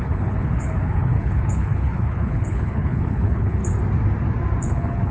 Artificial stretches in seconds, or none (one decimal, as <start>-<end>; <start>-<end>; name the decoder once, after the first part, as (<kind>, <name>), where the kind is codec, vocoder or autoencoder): 0.0-3.6 (codec, HILCodec); 4.6-5.1